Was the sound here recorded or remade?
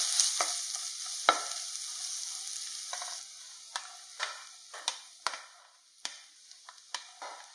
recorded